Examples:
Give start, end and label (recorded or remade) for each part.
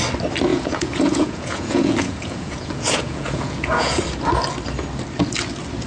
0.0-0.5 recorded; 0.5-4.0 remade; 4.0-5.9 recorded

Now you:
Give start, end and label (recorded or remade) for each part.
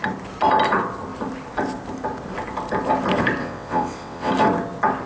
0.0-3.4 recorded; 3.4-4.3 remade; 4.3-5.1 recorded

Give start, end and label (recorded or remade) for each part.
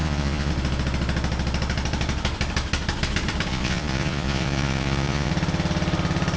0.0-0.5 remade; 0.5-3.5 recorded; 3.5-5.3 remade; 5.3-6.4 recorded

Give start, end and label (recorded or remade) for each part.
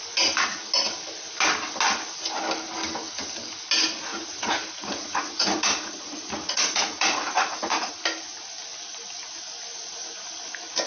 0.0-4.1 recorded; 4.1-7.9 remade; 7.9-10.9 recorded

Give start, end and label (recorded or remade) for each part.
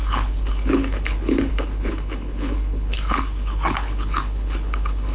0.0-5.1 remade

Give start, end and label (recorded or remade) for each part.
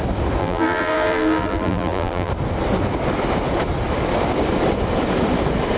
0.0-0.4 recorded; 0.4-2.3 remade; 2.3-5.8 recorded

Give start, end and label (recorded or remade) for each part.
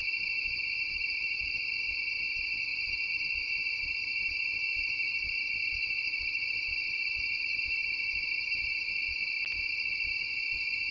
0.0-10.9 recorded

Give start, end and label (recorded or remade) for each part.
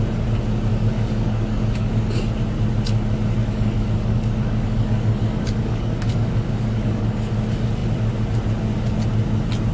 0.0-0.7 recorded; 0.7-2.2 remade; 2.2-3.4 recorded; 3.4-7.3 remade; 7.3-9.7 recorded